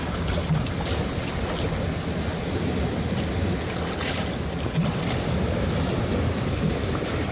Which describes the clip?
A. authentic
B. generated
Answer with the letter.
A